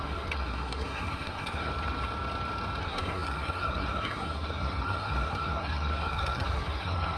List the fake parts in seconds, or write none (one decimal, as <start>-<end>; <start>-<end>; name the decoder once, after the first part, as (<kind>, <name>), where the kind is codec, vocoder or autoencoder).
0.0-1.7 (codec, SNAC); 2.8-7.2